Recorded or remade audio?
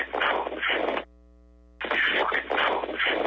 recorded